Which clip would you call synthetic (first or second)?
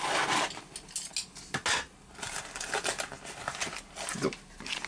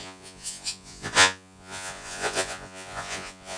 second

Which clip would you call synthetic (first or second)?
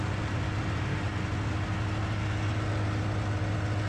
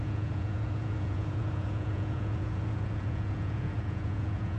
second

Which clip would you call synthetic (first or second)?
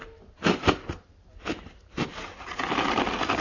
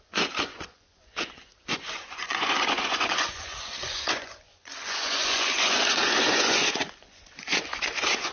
second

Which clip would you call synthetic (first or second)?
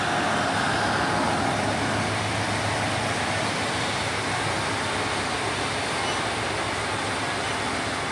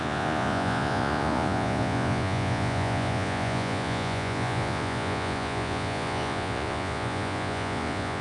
second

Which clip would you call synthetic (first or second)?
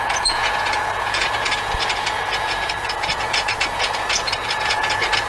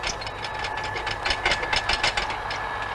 first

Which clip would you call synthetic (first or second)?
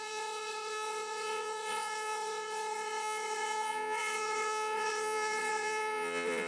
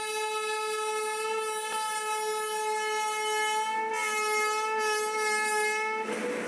first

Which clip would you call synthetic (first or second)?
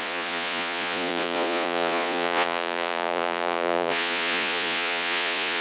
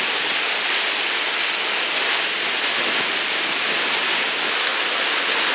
first